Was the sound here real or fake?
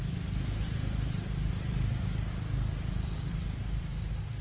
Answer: fake